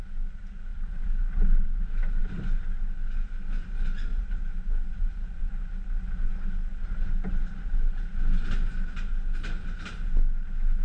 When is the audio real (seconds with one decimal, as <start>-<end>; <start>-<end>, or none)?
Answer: 0.0-0.7; 2.2-4.1; 5.4-10.8